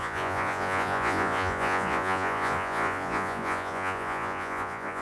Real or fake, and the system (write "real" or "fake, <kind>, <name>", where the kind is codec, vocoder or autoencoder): fake, vocoder, Vocos